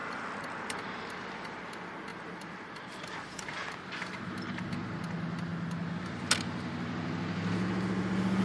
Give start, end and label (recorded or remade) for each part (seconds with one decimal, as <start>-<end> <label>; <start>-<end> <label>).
0.0-1.6 remade; 1.6-2.1 recorded; 2.1-3.7 remade; 3.7-8.4 recorded